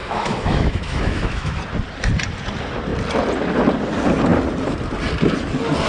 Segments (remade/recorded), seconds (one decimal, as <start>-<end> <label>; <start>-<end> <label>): 0.0-1.6 remade; 1.6-5.9 recorded